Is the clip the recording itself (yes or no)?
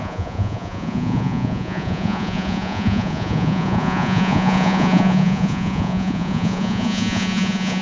no